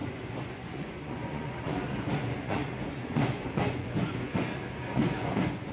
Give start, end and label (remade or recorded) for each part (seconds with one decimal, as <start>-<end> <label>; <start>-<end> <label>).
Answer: 0.0-5.7 remade